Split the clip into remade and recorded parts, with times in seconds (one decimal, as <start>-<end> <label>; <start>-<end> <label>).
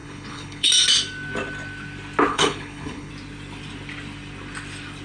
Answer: 0.0-0.7 remade; 0.7-2.3 recorded; 2.3-3.1 remade; 3.1-5.0 recorded